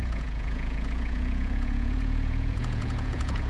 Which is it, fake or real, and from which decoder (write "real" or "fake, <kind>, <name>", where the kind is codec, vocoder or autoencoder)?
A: fake, vocoder, Vocos